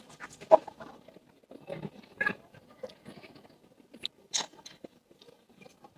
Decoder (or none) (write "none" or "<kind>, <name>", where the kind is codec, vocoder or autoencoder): none